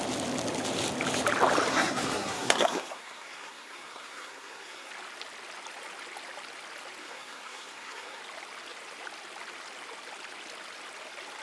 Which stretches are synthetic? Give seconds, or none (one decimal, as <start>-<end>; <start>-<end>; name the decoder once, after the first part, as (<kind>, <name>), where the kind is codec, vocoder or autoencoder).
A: 1.7-4.9 (codec, SNAC); 7.0-8.2